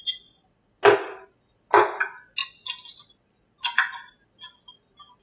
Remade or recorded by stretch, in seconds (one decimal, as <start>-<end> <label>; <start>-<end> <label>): 0.0-5.2 recorded